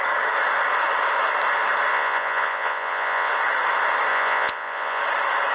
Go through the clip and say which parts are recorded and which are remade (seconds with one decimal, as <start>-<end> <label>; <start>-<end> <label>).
0.0-1.9 recorded; 1.9-3.3 remade; 3.3-4.1 recorded; 4.1-5.0 remade; 5.0-5.5 recorded